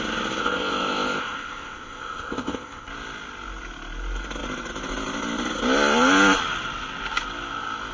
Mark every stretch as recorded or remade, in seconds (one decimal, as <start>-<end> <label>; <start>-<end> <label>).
0.0-0.4 recorded; 0.4-2.9 remade; 2.9-7.9 recorded